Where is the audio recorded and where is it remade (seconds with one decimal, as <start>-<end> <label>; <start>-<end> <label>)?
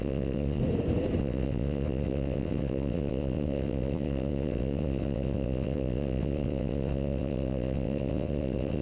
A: 0.0-0.6 remade; 0.6-1.2 recorded; 1.2-8.8 remade